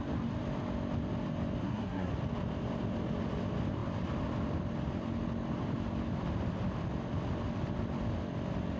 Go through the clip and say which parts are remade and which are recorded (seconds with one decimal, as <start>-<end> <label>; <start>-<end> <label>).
0.0-1.6 recorded; 1.6-2.1 remade; 2.1-8.8 recorded